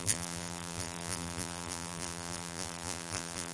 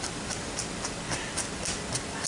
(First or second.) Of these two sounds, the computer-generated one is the first